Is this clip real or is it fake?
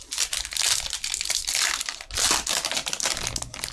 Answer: real